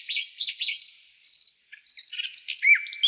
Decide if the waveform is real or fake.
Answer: real